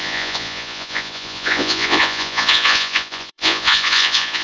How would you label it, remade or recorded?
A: remade